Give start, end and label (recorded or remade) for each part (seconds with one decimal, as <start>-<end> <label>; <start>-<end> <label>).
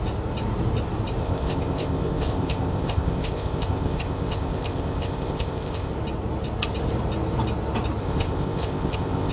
0.0-1.2 recorded; 1.2-5.9 remade; 5.9-8.0 recorded; 8.0-9.3 remade